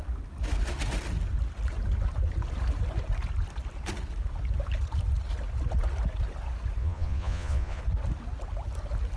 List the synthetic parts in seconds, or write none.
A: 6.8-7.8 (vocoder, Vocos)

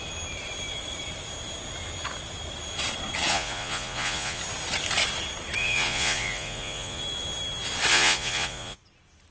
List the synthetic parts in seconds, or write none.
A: 3.3-4.4 (vocoder, Vocos); 5.6-7.0; 7.9-8.8

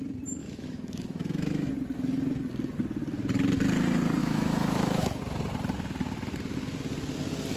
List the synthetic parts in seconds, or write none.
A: 0.4-1.7 (autoencoder, DAC-VAE); 4.2-5.2

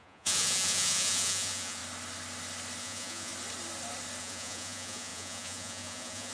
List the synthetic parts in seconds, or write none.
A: 0.0-1.8 (vocoder, Vocos); 2.8-3.3; 4.2-6.3

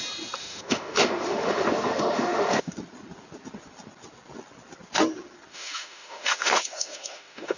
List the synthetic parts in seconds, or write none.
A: 0.4-2.7 (autoencoder, DAC-VAE); 5.5-7.6

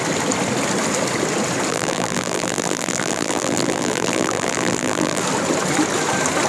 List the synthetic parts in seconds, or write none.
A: 1.7-5.2 (vocoder, BigVGAN v2)

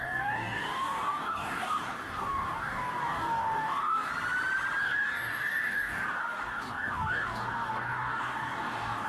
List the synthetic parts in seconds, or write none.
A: 0.0-4.1 (codec, DAC); 4.8-9.1